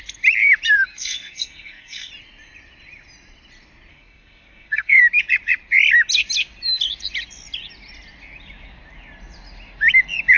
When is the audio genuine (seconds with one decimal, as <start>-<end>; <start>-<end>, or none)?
0.0-0.9; 2.1-3.9; 5.0-10.4

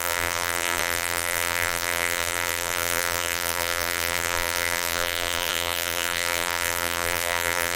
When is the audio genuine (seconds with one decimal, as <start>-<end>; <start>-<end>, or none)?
none

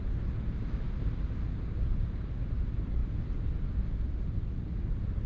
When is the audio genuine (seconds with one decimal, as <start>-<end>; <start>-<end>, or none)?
0.0-1.5; 2.4-5.3

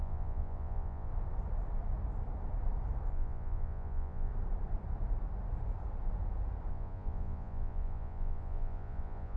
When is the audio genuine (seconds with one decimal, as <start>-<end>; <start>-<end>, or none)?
1.1-3.1; 4.3-6.7

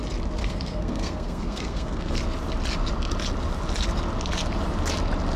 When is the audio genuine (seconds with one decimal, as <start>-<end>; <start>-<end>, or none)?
0.0-0.4; 2.2-5.4

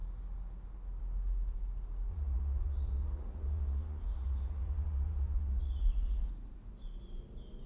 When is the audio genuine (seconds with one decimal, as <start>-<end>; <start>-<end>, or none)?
0.0-2.1; 6.3-7.7

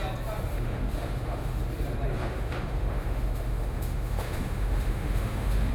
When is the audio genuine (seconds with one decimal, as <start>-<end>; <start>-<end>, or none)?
0.0-0.5; 1.6-2.1

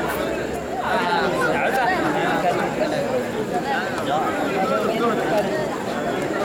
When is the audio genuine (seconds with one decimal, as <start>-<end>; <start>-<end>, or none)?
0.0-3.9; 5.1-6.4